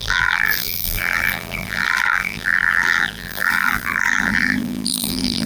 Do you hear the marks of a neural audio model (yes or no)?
yes